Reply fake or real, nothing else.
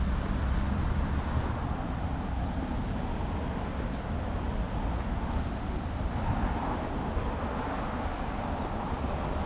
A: real